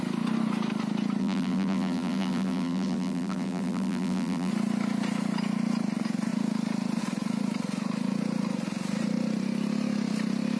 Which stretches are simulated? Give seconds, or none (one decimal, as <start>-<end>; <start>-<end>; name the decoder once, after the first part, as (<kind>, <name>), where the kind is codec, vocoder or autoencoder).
1.2-4.5 (vocoder, BigVGAN v2)